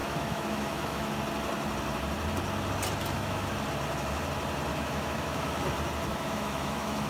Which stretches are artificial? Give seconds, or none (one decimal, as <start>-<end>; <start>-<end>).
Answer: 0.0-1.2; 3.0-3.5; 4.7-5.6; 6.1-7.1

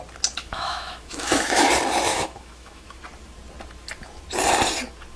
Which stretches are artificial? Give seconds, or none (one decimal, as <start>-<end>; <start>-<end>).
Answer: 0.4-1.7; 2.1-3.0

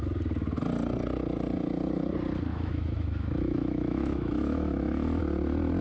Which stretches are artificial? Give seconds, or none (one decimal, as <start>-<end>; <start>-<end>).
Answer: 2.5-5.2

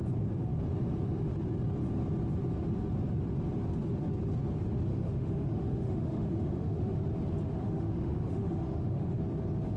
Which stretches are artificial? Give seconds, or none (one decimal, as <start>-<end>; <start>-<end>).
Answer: 4.9-7.0; 7.6-9.2